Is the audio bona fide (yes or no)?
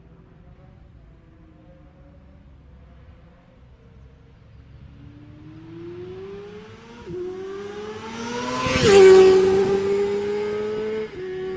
yes